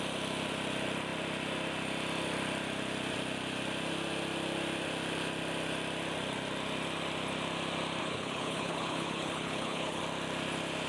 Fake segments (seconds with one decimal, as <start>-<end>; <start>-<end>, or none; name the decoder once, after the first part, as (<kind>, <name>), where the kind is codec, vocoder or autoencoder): 8.0-10.0 (codec, HILCodec)